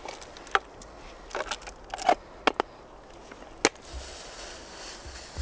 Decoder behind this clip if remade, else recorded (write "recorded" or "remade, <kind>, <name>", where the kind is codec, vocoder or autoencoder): recorded